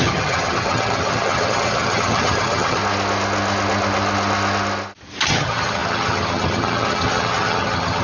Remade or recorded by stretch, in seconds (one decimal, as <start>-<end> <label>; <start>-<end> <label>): 0.0-2.8 remade; 2.8-5.3 recorded; 5.3-8.0 remade